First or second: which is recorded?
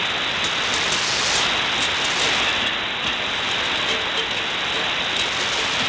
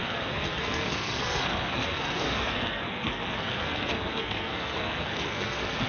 first